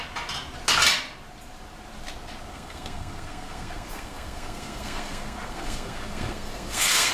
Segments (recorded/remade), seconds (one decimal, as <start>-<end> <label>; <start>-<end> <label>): 0.0-2.5 recorded; 2.5-7.1 remade